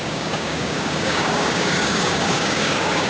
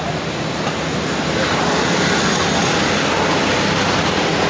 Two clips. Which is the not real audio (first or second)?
first